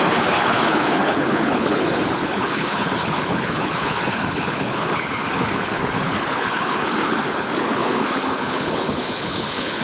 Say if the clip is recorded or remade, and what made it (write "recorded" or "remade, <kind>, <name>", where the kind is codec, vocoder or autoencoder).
remade, codec, HILCodec